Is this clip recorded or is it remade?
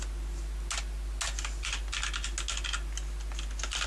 recorded